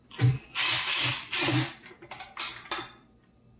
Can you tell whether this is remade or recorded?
recorded